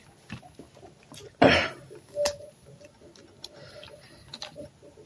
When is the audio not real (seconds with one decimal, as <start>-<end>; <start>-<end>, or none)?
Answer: none